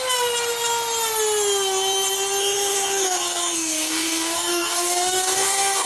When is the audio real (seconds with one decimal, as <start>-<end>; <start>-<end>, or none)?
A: 0.0-2.4